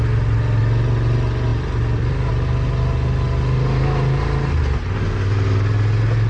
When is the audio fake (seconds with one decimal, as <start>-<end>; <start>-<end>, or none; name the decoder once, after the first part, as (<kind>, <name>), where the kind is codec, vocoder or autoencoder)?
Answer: 1.5-2.3 (vocoder, BigVGAN v2)